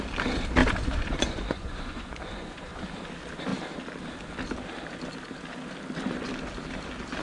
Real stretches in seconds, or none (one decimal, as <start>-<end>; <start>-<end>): 0.0-0.6; 2.8-7.2